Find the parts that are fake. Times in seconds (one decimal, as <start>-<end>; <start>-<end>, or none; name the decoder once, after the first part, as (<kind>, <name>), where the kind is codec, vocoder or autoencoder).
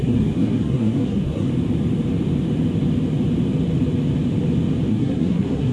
0.0-1.5 (codec, SNAC); 4.9-5.7